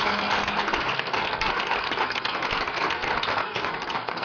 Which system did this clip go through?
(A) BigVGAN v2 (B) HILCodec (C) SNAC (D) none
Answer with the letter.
C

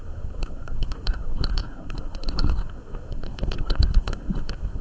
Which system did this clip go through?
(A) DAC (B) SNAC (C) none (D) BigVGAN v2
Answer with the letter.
B